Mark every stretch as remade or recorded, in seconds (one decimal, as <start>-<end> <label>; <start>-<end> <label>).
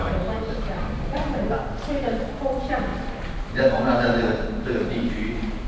0.0-2.4 remade; 2.4-2.9 recorded; 2.9-3.7 remade; 3.7-5.7 recorded